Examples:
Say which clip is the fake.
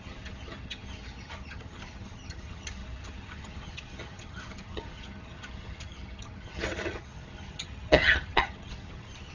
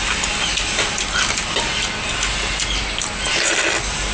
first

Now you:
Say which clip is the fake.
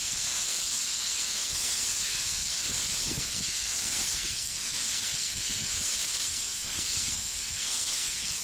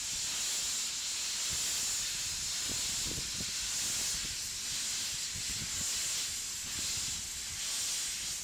first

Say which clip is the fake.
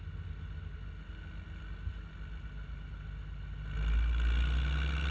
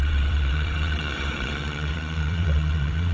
second